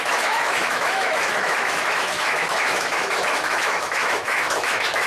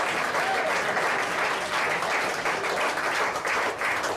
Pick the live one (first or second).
second